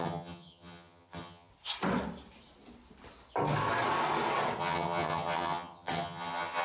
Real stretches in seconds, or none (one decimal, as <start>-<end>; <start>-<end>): 1.5-4.6